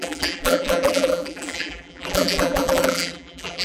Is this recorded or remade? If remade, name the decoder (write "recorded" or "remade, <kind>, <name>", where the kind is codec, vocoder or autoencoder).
remade, vocoder, BigVGAN v2